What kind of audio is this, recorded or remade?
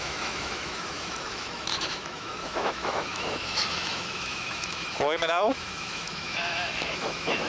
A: remade